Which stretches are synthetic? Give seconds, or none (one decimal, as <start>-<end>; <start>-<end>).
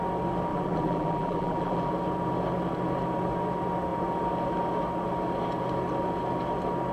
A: 0.5-1.9